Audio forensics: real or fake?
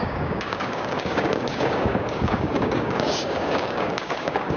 fake